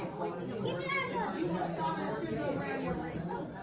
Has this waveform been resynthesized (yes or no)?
no